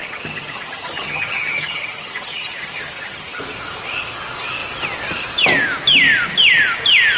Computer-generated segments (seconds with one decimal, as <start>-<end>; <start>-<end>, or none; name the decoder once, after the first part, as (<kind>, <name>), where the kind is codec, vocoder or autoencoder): 0.0-3.4 (vocoder, HiFi-GAN)